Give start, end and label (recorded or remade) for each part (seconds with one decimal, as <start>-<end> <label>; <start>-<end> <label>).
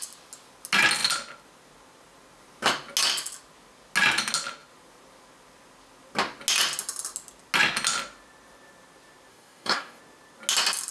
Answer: 0.0-9.3 recorded; 9.3-10.0 remade; 10.0-10.9 recorded